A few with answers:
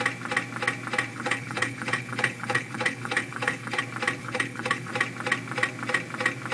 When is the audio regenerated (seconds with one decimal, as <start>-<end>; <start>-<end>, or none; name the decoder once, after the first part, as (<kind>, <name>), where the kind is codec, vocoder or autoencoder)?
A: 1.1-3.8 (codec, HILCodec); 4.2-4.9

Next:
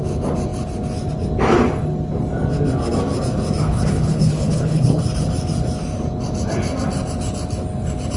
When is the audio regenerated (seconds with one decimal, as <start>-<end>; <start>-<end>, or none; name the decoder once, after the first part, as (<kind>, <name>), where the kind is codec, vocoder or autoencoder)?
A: 3.6-5.0 (codec, HILCodec)

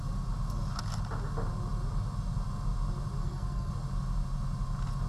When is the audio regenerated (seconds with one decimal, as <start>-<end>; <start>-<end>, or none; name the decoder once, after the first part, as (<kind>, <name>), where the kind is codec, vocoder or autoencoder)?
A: 3.2-3.7 (codec, SNAC)